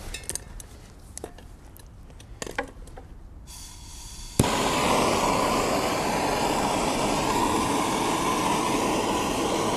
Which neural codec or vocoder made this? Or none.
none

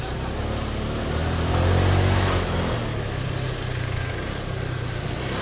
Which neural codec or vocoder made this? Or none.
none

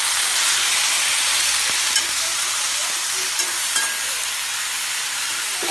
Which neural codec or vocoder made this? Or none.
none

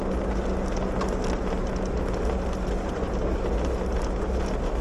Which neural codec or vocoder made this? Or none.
none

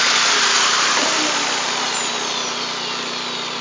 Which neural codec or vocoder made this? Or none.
none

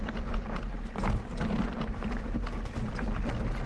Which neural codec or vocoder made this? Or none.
none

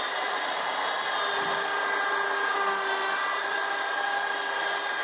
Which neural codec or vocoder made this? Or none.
none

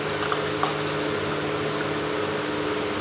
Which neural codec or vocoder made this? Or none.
none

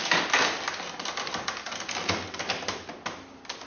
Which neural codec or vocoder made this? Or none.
none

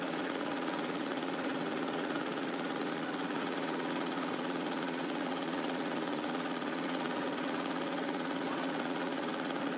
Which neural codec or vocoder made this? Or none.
vocoder, Vocos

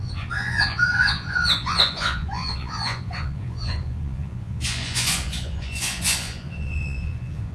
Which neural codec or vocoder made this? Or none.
vocoder, Vocos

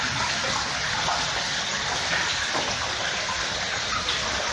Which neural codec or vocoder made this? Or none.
none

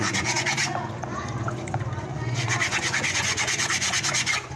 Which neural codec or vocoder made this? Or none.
vocoder, Vocos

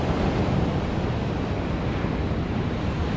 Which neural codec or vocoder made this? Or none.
none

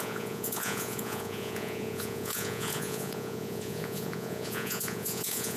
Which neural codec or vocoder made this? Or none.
vocoder, Vocos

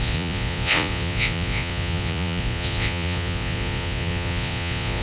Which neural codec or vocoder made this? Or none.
vocoder, Vocos